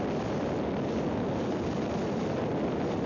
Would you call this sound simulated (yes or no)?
no